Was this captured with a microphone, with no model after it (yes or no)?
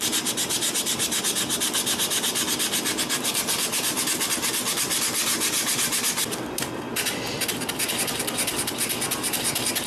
yes